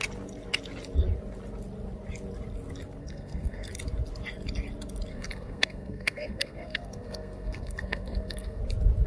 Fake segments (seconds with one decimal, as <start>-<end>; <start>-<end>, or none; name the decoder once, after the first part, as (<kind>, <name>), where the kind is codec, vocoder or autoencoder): 3.0-3.7 (codec, SNAC); 5.1-8.6